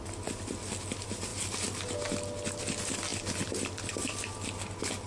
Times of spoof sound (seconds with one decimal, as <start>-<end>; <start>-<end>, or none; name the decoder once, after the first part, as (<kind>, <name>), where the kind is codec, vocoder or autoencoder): none